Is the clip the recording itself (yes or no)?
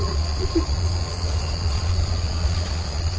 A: no